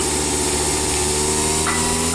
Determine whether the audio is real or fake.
real